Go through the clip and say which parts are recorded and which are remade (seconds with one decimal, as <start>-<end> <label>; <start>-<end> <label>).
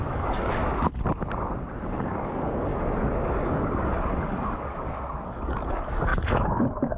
0.0-0.6 remade; 0.6-2.0 recorded; 2.0-2.7 remade; 2.7-3.5 recorded; 3.5-7.0 remade